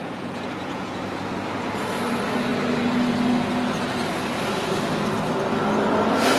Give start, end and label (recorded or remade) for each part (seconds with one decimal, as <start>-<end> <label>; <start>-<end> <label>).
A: 0.0-1.0 remade; 1.0-6.4 recorded